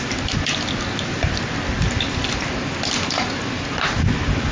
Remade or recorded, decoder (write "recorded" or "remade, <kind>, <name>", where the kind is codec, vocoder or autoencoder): recorded